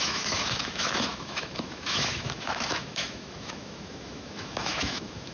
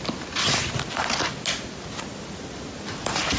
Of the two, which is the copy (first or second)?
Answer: first